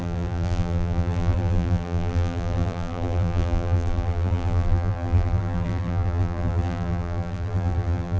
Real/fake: fake